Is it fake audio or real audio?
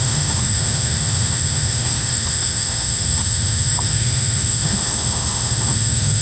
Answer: fake